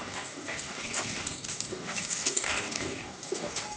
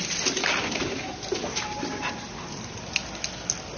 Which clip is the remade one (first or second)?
first